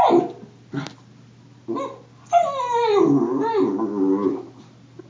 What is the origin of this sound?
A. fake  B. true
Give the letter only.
B